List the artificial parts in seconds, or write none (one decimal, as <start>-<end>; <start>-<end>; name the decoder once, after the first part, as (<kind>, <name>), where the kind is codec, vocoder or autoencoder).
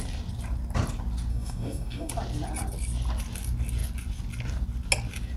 1.3-2.1 (codec, DAC)